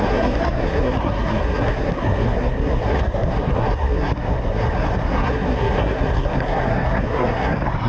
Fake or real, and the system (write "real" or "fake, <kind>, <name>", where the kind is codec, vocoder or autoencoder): fake, codec, SNAC